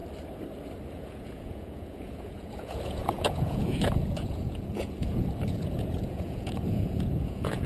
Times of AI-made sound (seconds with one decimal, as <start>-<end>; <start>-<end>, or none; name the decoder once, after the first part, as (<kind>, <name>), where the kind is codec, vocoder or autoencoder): 0.9-7.7 (vocoder, Vocos)